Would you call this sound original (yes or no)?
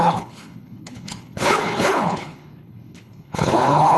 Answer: no